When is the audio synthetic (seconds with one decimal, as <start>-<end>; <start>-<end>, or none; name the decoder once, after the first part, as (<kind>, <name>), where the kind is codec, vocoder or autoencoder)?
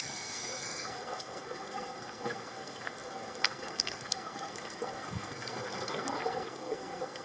0.0-7.2 (codec, SNAC)